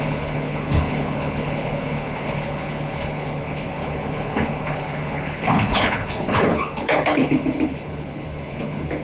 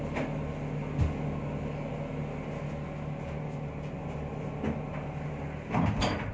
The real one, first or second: second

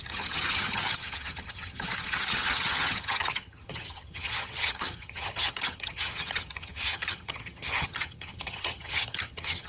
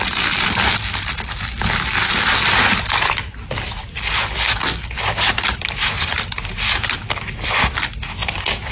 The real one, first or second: second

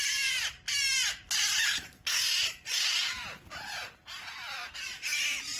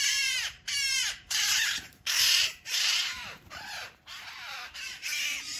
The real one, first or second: first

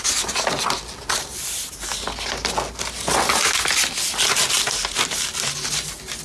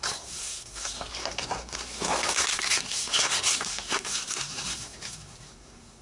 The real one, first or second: first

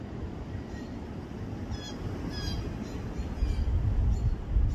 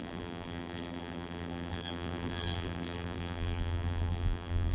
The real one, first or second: first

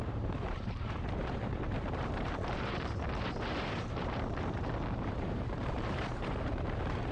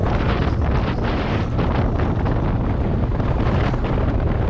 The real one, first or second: second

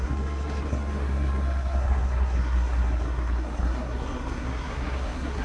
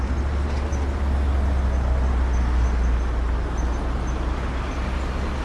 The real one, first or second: second